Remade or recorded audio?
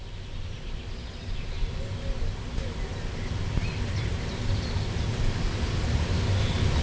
recorded